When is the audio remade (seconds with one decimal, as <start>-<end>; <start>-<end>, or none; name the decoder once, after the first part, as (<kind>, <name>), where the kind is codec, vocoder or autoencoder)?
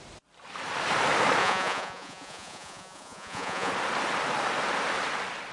1.4-3.7 (vocoder, Vocos)